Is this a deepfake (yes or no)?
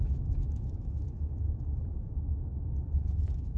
yes